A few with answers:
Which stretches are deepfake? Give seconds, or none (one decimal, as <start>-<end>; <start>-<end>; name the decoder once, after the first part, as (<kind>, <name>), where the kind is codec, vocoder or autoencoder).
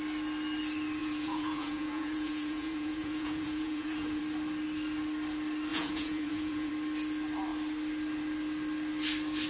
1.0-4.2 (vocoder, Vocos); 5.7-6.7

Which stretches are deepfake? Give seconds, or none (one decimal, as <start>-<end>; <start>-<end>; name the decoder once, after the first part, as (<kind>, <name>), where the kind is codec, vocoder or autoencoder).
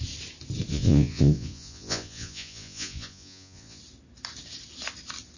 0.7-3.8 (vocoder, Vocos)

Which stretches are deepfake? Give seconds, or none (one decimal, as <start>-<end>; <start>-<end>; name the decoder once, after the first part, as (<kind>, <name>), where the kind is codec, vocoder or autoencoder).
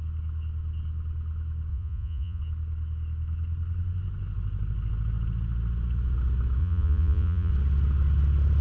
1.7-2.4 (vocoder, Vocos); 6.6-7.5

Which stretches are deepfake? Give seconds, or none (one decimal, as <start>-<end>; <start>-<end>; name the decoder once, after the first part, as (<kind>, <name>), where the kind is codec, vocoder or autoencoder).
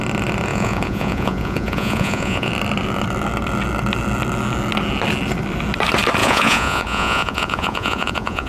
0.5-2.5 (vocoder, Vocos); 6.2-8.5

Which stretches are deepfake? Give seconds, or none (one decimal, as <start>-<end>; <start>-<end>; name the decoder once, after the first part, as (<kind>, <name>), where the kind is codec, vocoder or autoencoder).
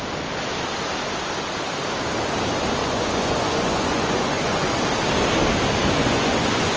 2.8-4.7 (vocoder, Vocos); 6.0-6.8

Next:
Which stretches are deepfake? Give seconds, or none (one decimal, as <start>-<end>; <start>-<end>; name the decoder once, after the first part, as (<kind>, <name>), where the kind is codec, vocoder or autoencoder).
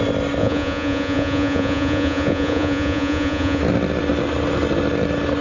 0.4-3.6 (vocoder, Vocos)